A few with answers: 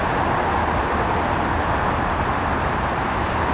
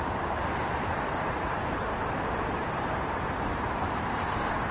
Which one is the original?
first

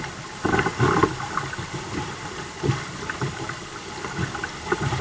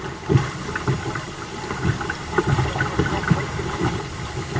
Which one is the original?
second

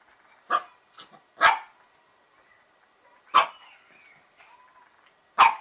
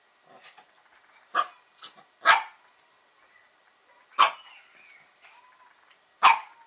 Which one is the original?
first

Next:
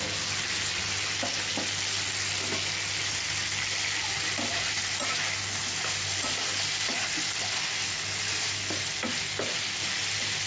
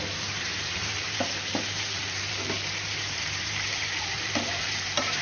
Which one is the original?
first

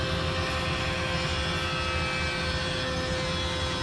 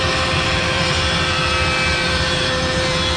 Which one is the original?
first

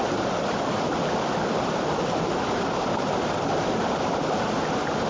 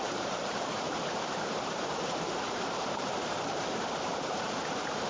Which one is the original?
first